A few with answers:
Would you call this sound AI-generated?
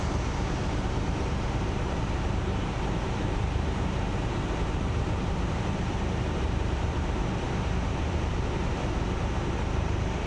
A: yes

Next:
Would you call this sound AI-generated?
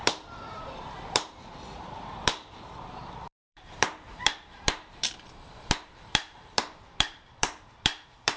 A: yes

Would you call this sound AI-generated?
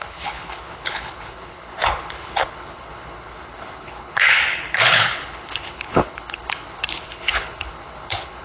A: yes